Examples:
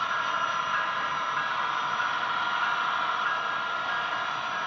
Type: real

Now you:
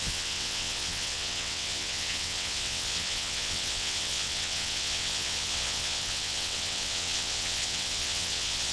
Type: fake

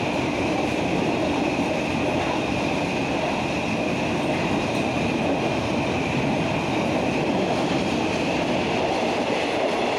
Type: real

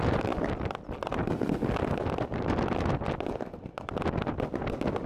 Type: real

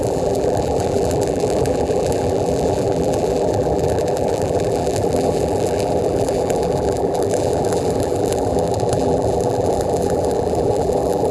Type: fake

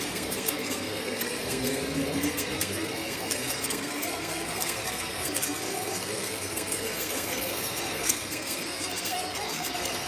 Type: fake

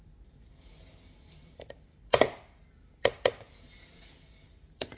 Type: fake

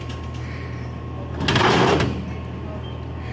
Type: real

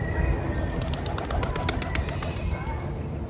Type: real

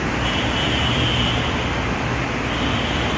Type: real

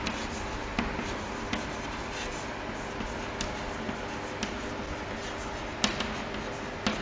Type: real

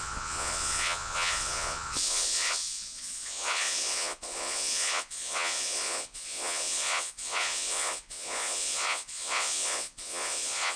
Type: fake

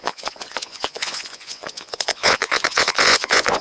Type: fake